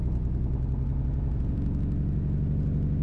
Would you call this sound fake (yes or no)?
no